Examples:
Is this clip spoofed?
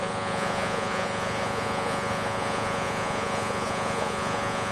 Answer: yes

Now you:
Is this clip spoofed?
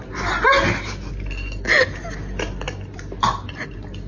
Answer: no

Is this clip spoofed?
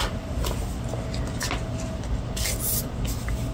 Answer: no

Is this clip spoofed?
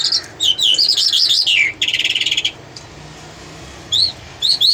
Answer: no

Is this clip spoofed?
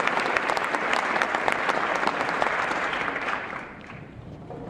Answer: yes